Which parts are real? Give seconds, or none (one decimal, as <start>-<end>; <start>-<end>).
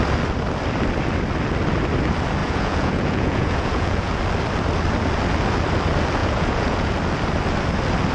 0.0-2.4; 4.2-6.2; 7.0-8.1